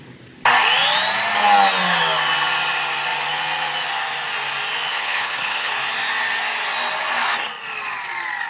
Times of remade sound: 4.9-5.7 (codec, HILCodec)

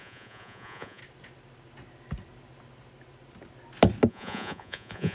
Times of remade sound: 0.0-1.0 (vocoder, Vocos); 4.1-5.1

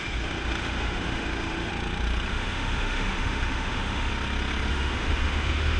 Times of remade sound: 0.0-1.7 (autoencoder, DAC-VAE); 2.3-4.1; 4.7-5.8

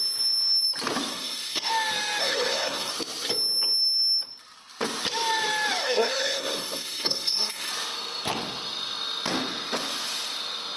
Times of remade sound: 1.1-1.7 (codec, SNAC); 2.2-2.9; 5.8-7.7

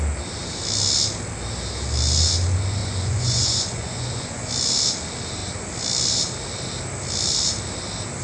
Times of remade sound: 2.8-4.5 (vocoder, Vocos)

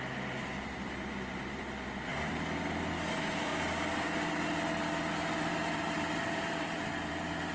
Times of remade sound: 0.0-2.1 (vocoder, BigVGAN v2); 2.9-3.5; 5.4-7.5

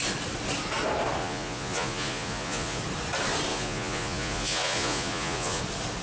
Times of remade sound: 1.2-2.8 (vocoder, Vocos); 3.5-5.6

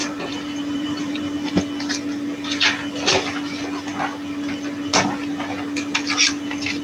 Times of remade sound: 0.0-1.5 (vocoder, BigVGAN v2)